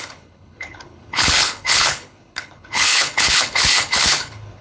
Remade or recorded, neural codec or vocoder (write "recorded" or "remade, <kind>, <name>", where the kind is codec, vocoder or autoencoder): remade, codec, HILCodec